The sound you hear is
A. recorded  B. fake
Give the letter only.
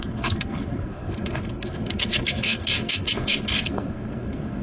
B